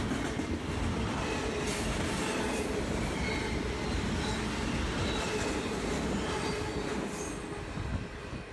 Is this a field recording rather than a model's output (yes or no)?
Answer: yes